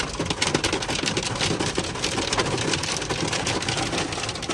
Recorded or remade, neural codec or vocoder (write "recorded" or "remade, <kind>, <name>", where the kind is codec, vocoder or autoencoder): recorded